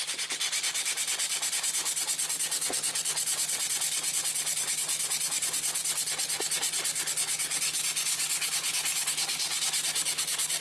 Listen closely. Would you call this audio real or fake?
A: real